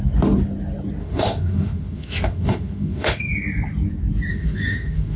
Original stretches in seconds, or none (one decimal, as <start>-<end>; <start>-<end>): 0.0-1.0; 3.3-4.3